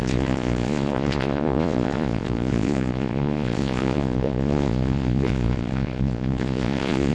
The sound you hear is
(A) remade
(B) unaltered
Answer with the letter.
A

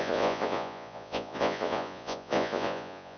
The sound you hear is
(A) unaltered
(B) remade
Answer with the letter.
B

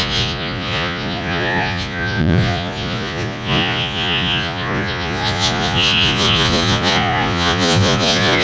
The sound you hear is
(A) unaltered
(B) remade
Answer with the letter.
B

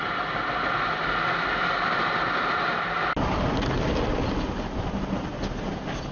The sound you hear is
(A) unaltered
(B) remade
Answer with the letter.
A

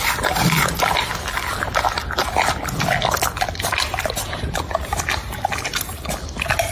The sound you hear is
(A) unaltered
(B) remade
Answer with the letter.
A